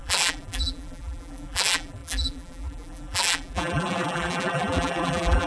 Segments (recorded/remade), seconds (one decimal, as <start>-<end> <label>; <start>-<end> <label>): 0.0-5.5 remade